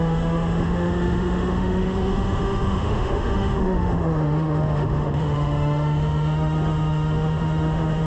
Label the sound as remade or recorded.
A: remade